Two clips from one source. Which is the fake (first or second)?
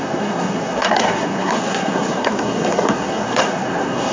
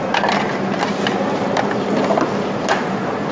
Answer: first